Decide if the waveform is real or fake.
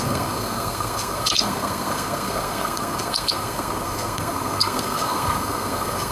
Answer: fake